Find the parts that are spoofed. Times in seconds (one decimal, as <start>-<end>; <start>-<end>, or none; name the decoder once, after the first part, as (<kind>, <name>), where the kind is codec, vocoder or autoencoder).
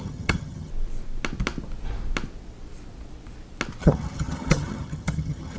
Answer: 0.0-0.7 (vocoder, HiFi-GAN); 3.8-5.6